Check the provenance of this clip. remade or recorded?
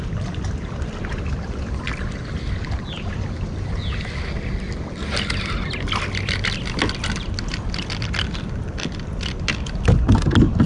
recorded